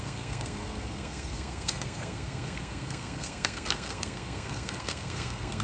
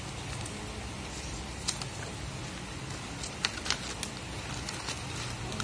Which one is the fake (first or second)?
first